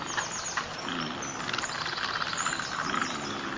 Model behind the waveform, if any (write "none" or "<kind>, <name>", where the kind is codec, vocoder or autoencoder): none